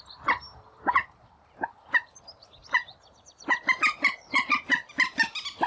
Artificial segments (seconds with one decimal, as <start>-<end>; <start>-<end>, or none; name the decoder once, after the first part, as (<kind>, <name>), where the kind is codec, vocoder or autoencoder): 1.0-2.2 (vocoder, BigVGAN v2)